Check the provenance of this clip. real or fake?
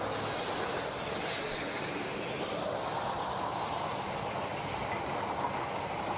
real